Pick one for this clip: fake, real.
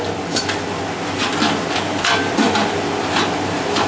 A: real